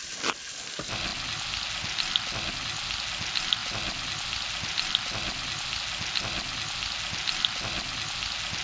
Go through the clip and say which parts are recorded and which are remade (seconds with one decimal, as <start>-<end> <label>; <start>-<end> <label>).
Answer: 0.0-3.6 recorded; 3.6-5.8 remade; 5.8-8.6 recorded